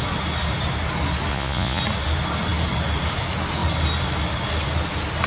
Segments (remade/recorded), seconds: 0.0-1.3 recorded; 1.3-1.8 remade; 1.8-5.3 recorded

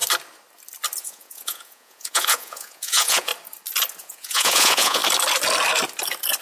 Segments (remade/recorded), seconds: 0.0-1.0 recorded; 1.0-3.3 remade; 3.3-4.0 recorded; 4.0-5.0 remade; 5.0-6.4 recorded

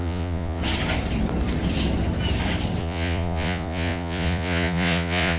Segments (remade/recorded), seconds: 0.0-0.6 remade; 0.6-2.8 recorded; 2.8-5.4 remade

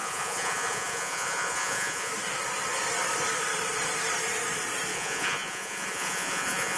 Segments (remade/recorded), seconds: 0.0-2.1 remade; 2.1-4.9 recorded; 4.9-6.8 remade

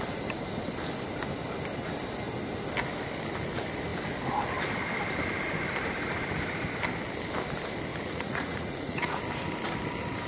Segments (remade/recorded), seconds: 0.0-7.9 recorded; 7.9-9.2 remade; 9.2-10.3 recorded